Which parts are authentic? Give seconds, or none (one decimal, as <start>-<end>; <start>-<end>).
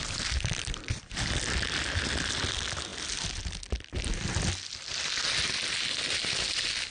1.2-6.9